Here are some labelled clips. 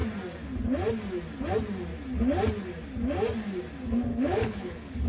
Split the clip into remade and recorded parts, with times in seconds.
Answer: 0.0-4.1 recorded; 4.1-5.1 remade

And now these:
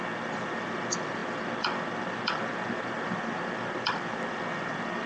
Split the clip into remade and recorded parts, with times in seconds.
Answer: 0.0-5.1 recorded

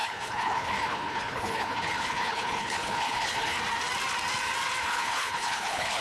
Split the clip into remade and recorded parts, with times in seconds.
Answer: 0.0-3.6 remade; 3.6-4.8 recorded; 4.8-6.0 remade

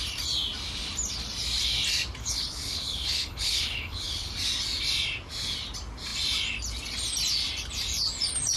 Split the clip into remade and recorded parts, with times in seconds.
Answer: 0.0-2.2 recorded; 2.2-4.3 remade; 4.3-8.6 recorded

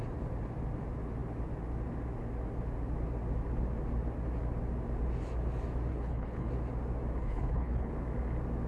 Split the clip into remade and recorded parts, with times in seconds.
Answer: 0.0-5.9 recorded; 5.9-6.5 remade; 6.5-7.2 recorded; 7.2-7.9 remade; 7.9-8.7 recorded

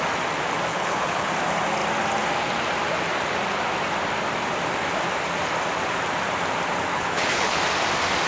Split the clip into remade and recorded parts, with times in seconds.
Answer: 0.0-0.7 recorded; 0.7-1.3 remade; 1.3-6.9 recorded; 6.9-7.6 remade; 7.6-8.3 recorded

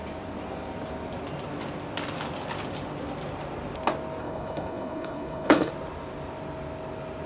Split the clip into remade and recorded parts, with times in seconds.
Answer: 0.0-4.2 recorded; 4.2-5.7 remade; 5.7-7.3 recorded

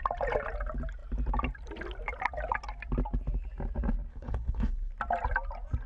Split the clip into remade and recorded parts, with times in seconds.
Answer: 0.0-4.1 recorded; 4.1-4.9 remade; 4.9-5.9 recorded